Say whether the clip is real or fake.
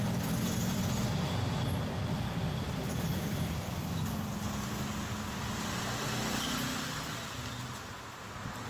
real